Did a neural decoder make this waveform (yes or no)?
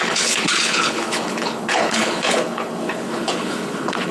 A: yes